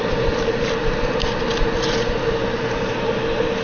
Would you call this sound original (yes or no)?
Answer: no